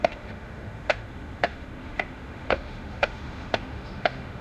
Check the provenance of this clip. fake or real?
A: fake